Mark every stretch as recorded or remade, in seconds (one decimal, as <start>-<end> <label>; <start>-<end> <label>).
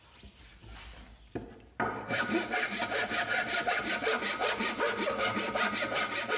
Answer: 0.0-0.6 recorded; 0.6-3.9 remade; 3.9-6.4 recorded